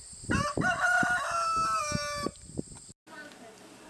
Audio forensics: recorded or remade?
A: recorded